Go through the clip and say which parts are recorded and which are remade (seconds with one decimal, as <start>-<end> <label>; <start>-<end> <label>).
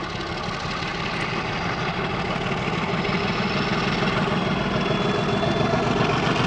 0.0-6.5 recorded